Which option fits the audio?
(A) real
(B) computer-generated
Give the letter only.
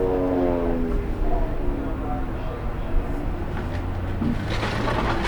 A